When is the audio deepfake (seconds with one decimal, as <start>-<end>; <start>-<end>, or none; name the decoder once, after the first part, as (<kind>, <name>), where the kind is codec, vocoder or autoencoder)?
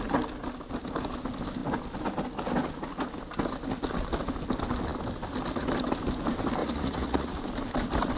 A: 6.6-7.4 (vocoder, Vocos)